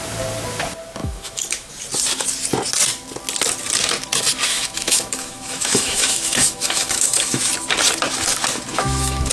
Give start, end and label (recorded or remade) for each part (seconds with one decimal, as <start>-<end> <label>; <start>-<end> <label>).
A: 0.0-1.0 recorded; 1.0-1.7 remade; 1.7-4.5 recorded; 4.5-7.5 remade; 7.5-8.7 recorded; 8.7-9.3 remade